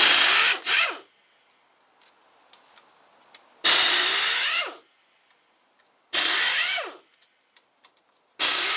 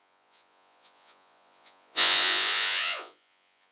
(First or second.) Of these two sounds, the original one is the first